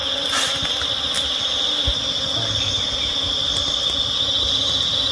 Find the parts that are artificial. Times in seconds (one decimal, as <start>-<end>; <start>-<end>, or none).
none